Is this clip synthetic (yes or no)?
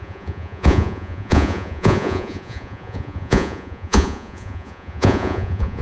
yes